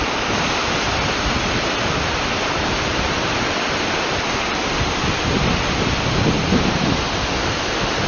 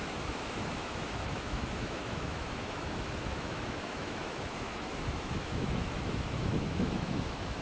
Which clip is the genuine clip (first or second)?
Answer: first